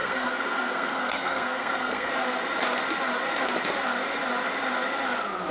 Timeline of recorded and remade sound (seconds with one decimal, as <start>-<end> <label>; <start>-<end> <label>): 0.0-2.1 remade; 2.1-5.5 recorded